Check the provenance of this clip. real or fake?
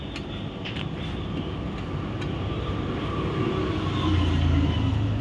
real